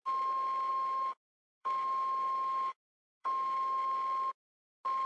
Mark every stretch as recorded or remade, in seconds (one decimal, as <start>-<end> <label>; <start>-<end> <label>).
0.0-0.7 recorded; 0.7-3.8 remade; 3.8-5.1 recorded